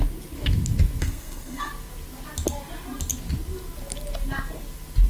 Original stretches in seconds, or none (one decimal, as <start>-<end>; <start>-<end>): 0.0-1.0; 1.7-5.1